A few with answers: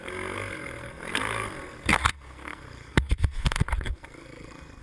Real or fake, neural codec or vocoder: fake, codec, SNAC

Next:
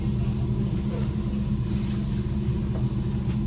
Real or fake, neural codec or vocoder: real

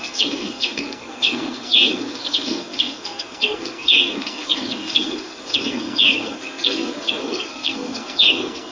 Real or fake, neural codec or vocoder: fake, codec, SNAC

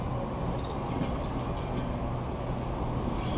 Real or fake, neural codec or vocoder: real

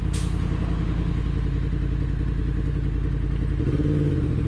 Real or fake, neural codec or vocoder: real